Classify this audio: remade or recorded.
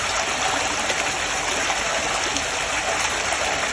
recorded